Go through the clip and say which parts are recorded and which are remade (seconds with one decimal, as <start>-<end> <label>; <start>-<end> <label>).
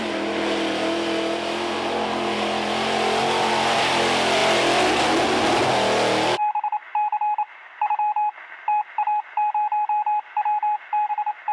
0.0-11.5 recorded